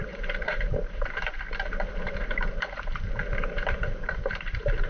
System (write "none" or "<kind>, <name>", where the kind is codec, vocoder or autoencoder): vocoder, BigVGAN v2